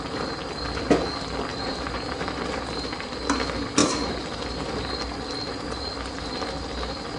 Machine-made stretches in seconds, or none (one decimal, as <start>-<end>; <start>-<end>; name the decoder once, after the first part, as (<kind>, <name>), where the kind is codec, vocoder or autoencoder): 1.5-2.6 (vocoder, BigVGAN v2); 3.8-4.7